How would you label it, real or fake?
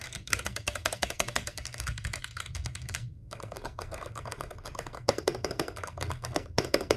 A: fake